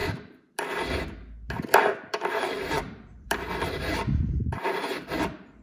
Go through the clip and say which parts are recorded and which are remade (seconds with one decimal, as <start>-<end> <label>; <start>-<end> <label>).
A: 0.0-0.6 remade; 0.6-2.1 recorded; 2.1-5.6 remade